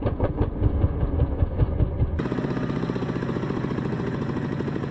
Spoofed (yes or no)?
yes